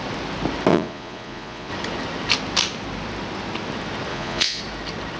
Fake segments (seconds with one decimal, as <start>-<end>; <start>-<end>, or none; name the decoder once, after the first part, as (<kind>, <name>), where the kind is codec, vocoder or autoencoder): 0.7-1.7 (vocoder, Vocos); 4.1-4.6